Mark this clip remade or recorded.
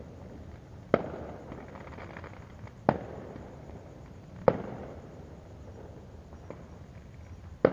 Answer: remade